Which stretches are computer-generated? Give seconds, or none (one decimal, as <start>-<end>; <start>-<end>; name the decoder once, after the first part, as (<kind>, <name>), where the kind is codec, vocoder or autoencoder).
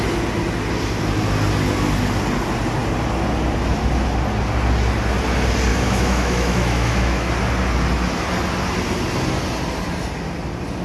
5.7-7.3 (autoencoder, DAC-VAE)